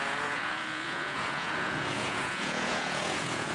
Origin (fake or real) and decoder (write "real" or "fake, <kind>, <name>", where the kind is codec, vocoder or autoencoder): fake, vocoder, Vocos